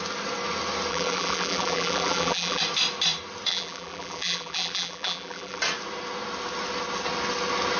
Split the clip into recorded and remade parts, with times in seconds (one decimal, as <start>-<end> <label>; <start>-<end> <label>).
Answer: 0.0-0.9 recorded; 0.9-2.6 remade; 2.6-3.5 recorded; 3.5-5.6 remade; 5.6-7.8 recorded